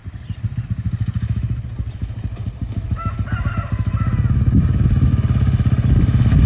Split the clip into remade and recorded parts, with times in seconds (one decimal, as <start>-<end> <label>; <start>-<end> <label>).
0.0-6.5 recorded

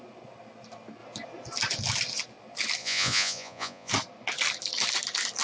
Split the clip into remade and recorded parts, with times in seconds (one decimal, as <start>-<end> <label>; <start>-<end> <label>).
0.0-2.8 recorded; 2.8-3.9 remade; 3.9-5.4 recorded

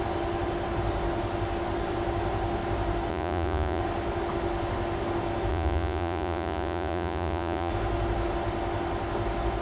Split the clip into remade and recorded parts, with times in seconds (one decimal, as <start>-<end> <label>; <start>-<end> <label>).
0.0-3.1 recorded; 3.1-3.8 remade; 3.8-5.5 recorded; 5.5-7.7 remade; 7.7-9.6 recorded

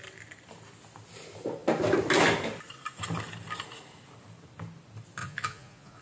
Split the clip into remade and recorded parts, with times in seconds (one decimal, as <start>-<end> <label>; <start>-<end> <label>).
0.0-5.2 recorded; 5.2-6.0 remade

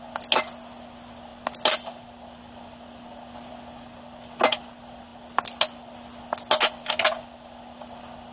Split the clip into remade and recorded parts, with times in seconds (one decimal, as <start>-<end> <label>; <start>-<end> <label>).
0.0-8.3 recorded

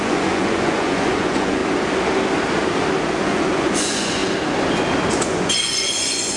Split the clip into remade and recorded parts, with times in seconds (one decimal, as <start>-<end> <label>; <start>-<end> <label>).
0.0-1.6 remade; 1.6-3.2 recorded; 3.2-4.2 remade; 4.2-5.2 recorded; 5.2-6.4 remade

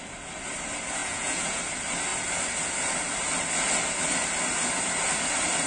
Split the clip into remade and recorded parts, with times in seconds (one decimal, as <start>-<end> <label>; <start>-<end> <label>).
0.0-1.0 recorded; 1.0-1.6 remade; 1.6-5.7 recorded